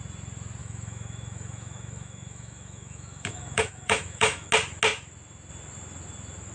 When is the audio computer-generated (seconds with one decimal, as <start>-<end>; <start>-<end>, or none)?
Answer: 0.6-4.5

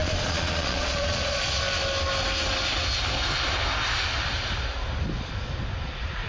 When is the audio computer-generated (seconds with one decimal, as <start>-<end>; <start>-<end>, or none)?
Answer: 0.0-1.6

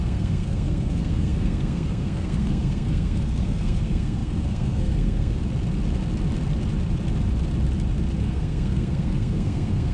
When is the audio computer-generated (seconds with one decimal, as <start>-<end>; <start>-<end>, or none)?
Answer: 0.0-5.4; 8.2-9.9

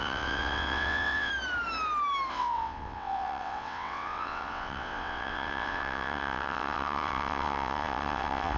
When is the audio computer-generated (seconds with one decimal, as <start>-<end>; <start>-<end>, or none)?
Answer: 0.0-1.3; 2.3-8.6

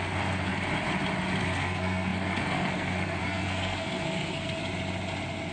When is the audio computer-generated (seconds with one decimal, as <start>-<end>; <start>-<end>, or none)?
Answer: 0.0-0.5; 1.4-4.6

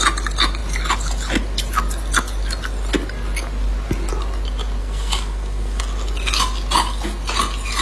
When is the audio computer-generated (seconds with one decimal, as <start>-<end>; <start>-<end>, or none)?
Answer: 4.8-5.8